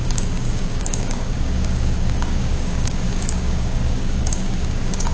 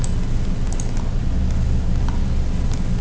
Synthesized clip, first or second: first